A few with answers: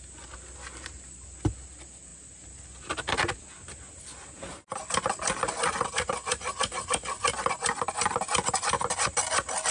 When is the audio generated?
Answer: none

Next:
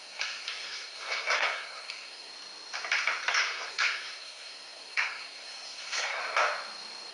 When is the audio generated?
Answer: 0.0-2.3; 3.3-6.2

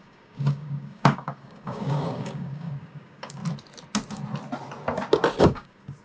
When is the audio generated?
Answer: 0.0-3.4; 5.4-6.0

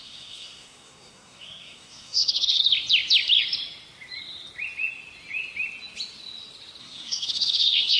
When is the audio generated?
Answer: 0.0-2.6; 6.8-8.0

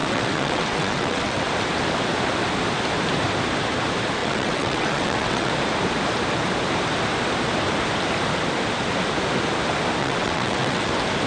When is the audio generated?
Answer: 0.0-1.4; 4.2-5.5; 10.0-10.9